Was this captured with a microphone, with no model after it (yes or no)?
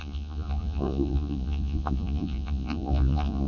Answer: no